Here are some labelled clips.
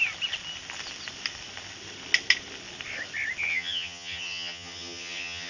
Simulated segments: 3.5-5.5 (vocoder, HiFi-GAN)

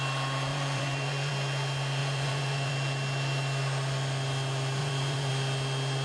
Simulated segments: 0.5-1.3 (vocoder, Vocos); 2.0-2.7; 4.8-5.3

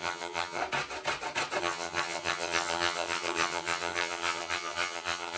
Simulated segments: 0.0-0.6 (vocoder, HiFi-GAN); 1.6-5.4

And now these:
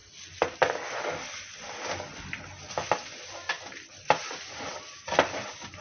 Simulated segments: none

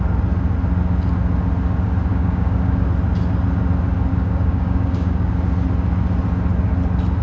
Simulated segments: 2.1-2.9 (codec, DAC); 4.1-5.3

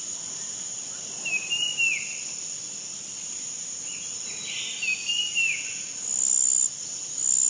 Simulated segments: none

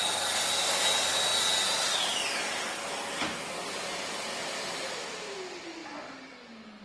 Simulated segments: none